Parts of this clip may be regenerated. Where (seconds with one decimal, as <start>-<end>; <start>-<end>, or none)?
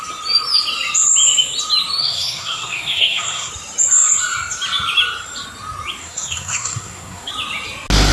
2.0-3.5; 6.0-7.3